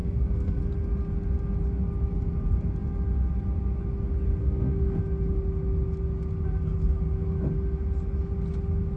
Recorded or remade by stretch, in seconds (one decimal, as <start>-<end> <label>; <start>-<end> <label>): 0.0-0.6 remade; 0.6-4.4 recorded; 4.4-5.0 remade; 5.0-9.0 recorded